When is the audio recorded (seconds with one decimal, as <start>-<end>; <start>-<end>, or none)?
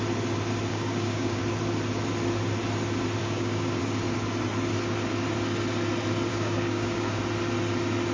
0.0-0.7; 1.4-3.2; 3.8-6.3; 7.2-8.1